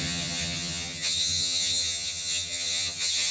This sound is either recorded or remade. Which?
remade